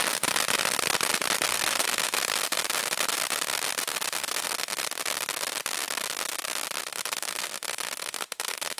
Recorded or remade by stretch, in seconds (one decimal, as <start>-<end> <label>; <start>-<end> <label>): 0.0-1.5 recorded; 1.5-2.2 remade; 2.2-4.2 recorded; 4.2-4.8 remade; 4.8-6.9 recorded; 6.9-8.8 remade